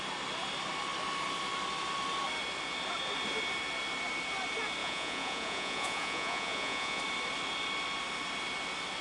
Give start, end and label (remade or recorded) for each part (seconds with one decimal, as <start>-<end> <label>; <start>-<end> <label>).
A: 0.0-4.8 recorded; 4.8-7.0 remade; 7.0-9.0 recorded